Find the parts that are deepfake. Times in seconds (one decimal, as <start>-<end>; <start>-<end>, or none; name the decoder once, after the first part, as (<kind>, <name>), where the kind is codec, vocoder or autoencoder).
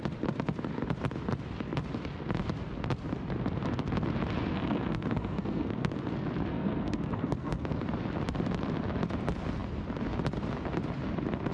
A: 4.5-6.0 (codec, SNAC); 6.5-7.8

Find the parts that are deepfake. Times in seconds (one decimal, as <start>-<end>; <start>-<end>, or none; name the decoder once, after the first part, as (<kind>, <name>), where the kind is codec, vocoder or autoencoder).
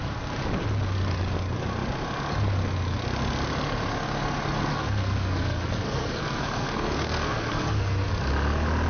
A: 4.7-8.1 (codec, SNAC)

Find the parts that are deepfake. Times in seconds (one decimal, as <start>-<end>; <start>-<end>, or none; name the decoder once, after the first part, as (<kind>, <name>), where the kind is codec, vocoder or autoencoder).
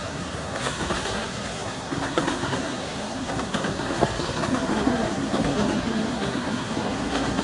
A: 0.0-7.4 (codec, SNAC)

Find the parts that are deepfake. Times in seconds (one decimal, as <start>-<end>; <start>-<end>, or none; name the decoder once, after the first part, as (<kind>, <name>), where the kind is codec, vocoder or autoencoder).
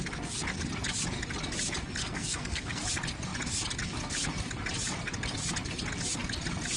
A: 2.0-2.8 (codec, SNAC)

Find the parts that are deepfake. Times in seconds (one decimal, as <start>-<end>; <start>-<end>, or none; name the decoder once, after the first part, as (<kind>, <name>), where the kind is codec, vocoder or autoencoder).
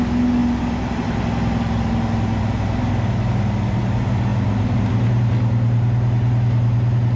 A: none